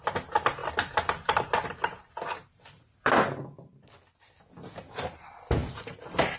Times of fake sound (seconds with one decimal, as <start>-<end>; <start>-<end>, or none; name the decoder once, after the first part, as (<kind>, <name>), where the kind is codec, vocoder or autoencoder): 0.6-4.2 (vocoder, BigVGAN v2)